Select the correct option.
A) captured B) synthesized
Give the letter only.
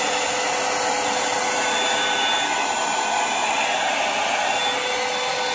A